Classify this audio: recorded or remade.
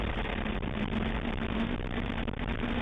remade